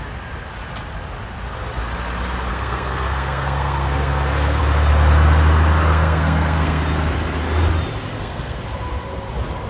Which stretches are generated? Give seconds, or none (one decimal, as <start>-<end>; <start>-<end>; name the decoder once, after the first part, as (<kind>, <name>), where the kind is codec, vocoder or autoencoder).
2.5-4.6 (codec, SNAC); 5.9-6.8; 8.1-8.6